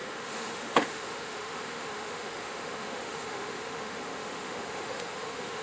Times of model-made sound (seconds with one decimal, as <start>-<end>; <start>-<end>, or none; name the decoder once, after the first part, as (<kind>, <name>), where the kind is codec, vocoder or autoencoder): 0.0-5.6 (autoencoder, DAC-VAE)